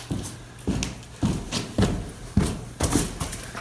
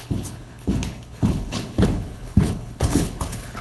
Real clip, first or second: first